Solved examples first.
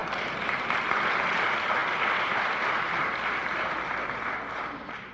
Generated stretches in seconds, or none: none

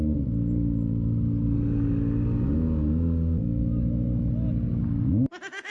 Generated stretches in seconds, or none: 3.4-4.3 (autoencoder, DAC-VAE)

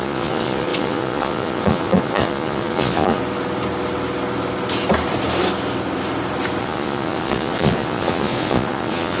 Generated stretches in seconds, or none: 0.0-3.2 (vocoder, Vocos); 6.6-9.2